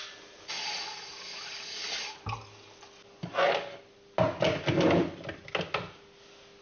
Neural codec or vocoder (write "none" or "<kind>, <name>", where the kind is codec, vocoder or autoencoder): none